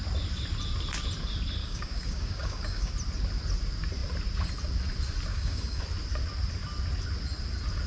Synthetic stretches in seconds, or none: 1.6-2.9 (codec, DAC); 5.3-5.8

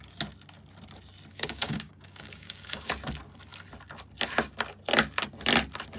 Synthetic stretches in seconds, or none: 1.3-2.9 (codec, DAC)

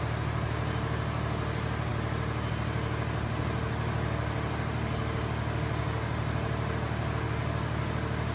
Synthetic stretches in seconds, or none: none

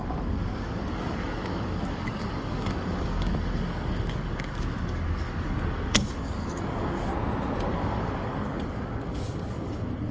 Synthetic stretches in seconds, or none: 0.0-7.1 (codec, DAC); 7.7-10.1